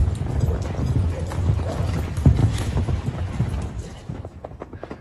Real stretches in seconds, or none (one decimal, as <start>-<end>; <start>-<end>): 0.0-2.4; 2.9-4.0